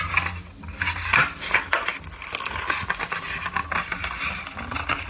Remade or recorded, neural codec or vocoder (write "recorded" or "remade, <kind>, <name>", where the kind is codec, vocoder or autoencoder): recorded